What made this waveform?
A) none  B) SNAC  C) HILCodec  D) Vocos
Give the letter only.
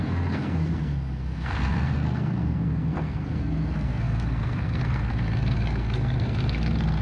B